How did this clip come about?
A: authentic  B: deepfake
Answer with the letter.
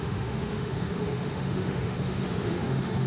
B